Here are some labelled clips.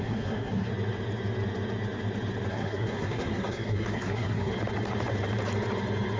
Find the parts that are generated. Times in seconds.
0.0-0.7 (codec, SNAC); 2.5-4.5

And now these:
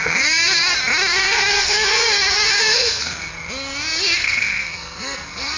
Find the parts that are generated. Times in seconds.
0.0-0.6 (codec, SNAC); 1.2-3.3; 4.2-5.6

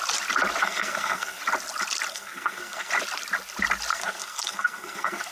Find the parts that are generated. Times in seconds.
0.6-1.4 (codec, SNAC); 2.1-2.9; 3.9-5.3